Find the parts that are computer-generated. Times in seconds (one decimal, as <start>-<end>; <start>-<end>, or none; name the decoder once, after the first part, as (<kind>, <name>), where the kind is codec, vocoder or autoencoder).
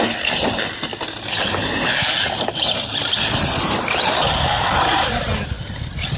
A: none